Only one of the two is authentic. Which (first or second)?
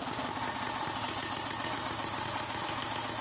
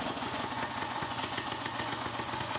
first